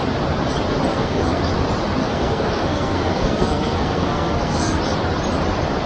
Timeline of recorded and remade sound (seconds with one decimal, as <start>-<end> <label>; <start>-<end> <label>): 0.0-0.9 recorded; 0.9-1.4 remade; 1.4-2.0 recorded; 2.0-4.8 remade; 4.8-5.9 recorded